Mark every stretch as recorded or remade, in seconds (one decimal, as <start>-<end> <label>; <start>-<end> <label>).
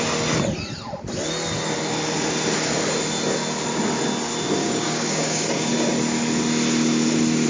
0.0-4.6 recorded; 4.6-5.7 remade; 5.7-7.5 recorded